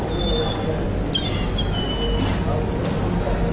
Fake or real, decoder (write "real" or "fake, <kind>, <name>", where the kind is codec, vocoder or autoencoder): real